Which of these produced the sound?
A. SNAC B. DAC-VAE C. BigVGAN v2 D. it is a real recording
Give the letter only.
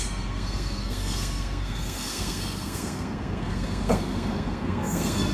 A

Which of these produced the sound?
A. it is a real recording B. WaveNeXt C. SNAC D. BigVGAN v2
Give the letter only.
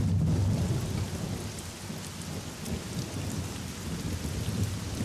A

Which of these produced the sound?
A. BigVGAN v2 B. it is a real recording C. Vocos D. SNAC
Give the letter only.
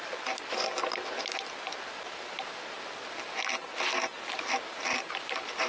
B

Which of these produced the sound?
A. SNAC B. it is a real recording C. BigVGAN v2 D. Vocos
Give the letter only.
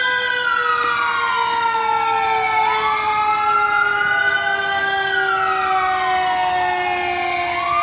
B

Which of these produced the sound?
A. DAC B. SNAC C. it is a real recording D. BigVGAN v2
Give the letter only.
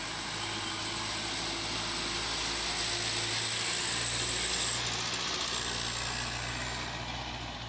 C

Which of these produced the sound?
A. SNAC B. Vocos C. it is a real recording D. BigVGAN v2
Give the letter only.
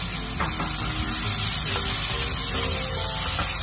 C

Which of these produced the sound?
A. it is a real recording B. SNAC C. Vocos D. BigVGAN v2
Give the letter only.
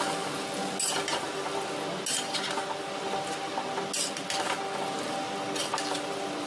A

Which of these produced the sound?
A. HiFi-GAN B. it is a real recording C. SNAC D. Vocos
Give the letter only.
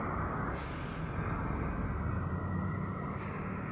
B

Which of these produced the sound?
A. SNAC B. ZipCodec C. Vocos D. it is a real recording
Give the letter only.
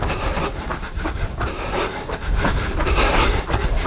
D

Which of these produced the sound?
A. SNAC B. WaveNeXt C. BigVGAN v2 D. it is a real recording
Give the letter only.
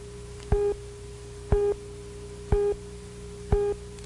D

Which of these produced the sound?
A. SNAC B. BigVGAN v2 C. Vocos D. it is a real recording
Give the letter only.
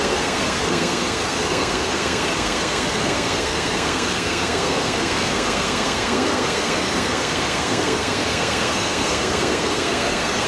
A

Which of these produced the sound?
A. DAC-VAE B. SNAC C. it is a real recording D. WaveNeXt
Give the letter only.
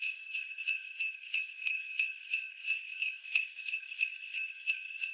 B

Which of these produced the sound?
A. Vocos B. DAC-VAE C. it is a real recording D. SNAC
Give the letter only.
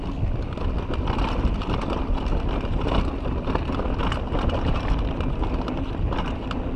C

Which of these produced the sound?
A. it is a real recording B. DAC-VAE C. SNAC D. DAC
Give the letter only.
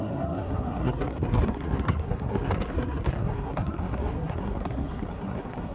C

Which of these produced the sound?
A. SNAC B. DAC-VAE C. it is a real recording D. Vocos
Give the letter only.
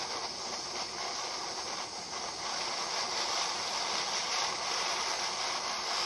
C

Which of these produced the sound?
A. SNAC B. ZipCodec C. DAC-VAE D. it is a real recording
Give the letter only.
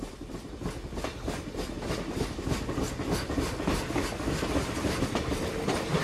D